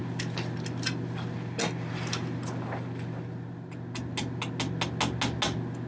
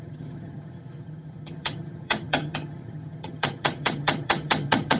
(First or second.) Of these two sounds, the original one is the first